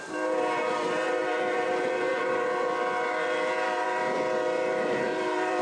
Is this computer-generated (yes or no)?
yes